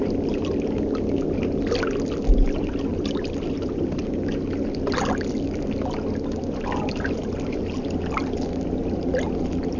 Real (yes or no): yes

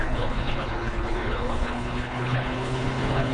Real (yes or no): no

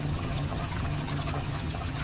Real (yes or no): no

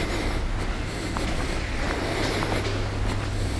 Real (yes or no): yes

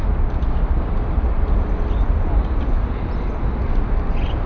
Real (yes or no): yes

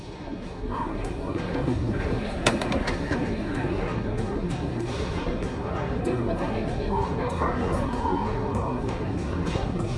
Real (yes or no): no